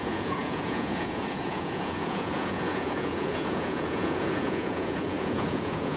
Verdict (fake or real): fake